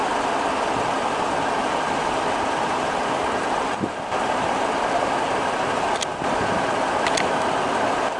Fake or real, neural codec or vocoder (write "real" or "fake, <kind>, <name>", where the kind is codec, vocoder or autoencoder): fake, vocoder, BigVGAN v2